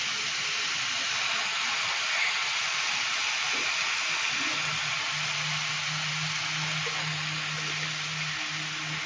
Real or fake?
real